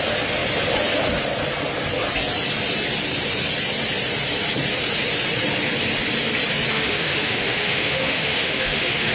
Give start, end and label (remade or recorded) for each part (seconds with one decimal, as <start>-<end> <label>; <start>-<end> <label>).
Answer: 0.0-6.7 recorded; 6.7-9.1 remade